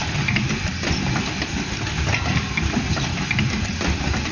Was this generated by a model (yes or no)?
no